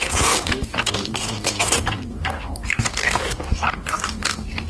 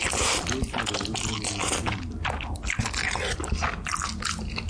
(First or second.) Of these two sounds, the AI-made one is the first